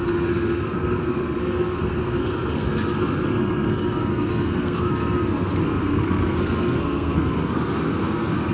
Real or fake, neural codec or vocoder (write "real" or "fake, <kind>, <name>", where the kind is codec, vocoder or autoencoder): fake, codec, SNAC